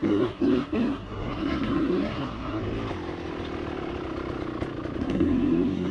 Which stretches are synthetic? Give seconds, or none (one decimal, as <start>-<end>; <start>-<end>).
0.0-2.6; 5.0-5.9